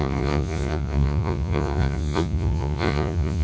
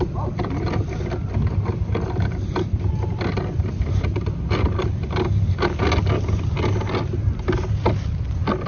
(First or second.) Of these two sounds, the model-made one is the first